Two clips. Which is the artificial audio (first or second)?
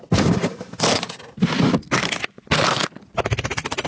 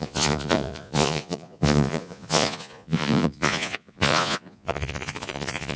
second